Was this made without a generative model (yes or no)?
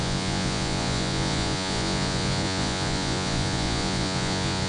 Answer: no